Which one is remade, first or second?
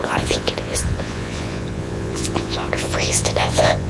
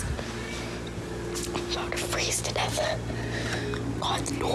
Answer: first